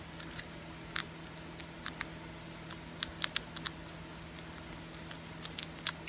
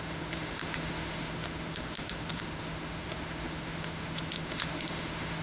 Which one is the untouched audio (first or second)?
first